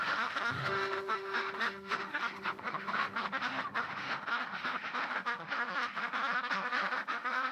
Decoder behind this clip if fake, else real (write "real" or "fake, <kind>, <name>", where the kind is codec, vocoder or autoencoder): fake, autoencoder, DAC-VAE